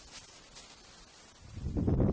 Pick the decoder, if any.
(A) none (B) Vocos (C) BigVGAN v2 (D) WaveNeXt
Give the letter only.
A